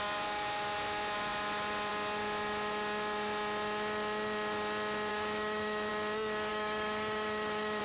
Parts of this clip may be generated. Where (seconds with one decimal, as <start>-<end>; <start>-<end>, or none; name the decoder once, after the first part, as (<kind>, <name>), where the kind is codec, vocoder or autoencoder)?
5.1-5.9 (autoencoder, DAC-VAE); 6.5-7.8